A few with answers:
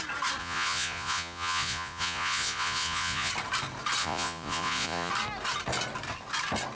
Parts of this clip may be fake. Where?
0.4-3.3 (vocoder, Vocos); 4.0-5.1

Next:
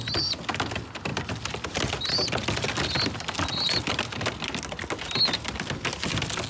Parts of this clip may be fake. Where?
none

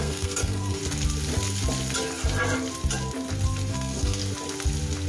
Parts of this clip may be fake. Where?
0.0-0.8 (codec, SNAC); 3.7-4.2

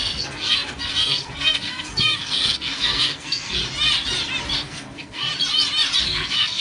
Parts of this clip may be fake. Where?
0.0-3.6 (codec, SNAC); 4.6-5.3; 6.0-6.6

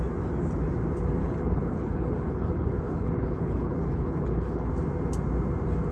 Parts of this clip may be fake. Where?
1.2-4.7 (codec, HILCodec)

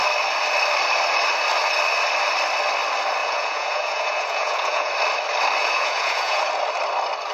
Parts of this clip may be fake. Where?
3.2-4.9 (vocoder, Vocos); 5.6-6.4